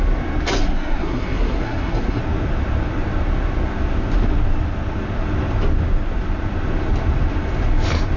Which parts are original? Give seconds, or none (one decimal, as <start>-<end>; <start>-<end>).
0.0-0.6; 2.2-8.2